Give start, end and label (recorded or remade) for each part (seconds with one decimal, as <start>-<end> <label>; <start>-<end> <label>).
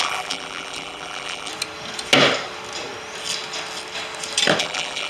0.0-1.5 remade; 1.5-4.6 recorded; 4.6-5.1 remade